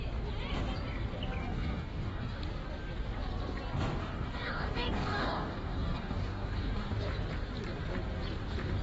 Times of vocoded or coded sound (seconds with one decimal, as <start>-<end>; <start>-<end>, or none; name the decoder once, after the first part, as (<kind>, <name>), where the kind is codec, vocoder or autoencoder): 1.4-2.4 (codec, DAC); 4.0-6.9